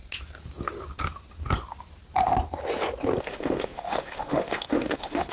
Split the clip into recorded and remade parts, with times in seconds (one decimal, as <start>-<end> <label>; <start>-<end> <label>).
0.0-3.2 recorded; 3.2-5.3 remade

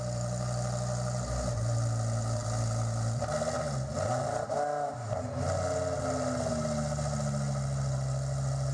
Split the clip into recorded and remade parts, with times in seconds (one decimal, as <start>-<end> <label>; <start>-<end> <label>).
0.0-8.7 recorded

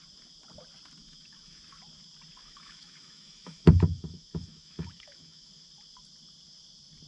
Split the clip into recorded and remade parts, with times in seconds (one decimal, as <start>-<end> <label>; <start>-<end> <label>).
0.0-1.0 recorded; 1.0-1.6 remade; 1.6-2.4 recorded; 2.4-5.5 remade; 5.5-7.1 recorded

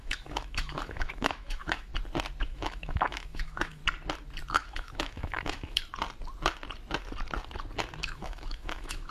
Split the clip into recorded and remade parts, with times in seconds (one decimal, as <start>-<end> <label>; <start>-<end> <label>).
0.0-1.9 remade; 1.9-2.4 recorded; 2.4-3.8 remade; 3.8-4.5 recorded; 4.5-5.8 remade; 5.8-8.0 recorded; 8.0-9.1 remade

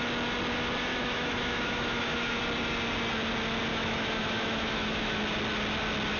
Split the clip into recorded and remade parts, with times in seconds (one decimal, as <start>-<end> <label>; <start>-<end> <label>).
0.0-0.9 recorded; 0.9-2.4 remade; 2.4-3.7 recorded; 3.7-5.2 remade; 5.2-6.2 recorded

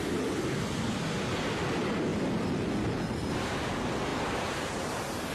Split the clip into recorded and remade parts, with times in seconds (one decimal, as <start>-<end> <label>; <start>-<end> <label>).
0.0-5.3 recorded

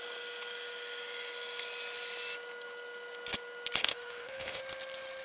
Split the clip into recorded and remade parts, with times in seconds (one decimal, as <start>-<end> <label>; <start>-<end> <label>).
0.0-3.8 recorded; 3.8-4.6 remade; 4.6-5.2 recorded